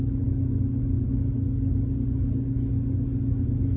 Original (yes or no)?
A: yes